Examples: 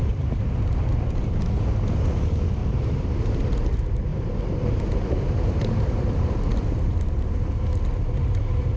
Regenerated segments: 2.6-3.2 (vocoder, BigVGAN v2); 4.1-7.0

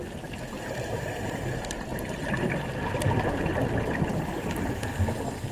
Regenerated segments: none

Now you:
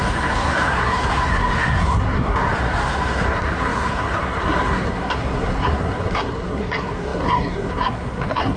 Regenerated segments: 0.0-8.6 (codec, SNAC)